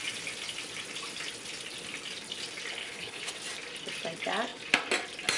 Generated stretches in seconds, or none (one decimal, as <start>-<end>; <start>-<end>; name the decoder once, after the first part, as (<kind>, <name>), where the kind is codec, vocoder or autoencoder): 2.8-3.3 (codec, HILCodec)